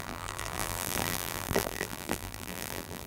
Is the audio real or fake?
fake